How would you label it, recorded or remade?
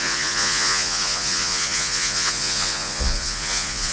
remade